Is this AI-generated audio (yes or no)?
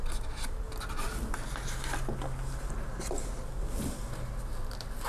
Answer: no